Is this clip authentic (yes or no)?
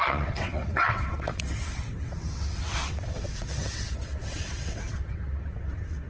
no